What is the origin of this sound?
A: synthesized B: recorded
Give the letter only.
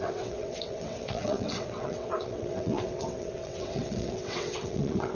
A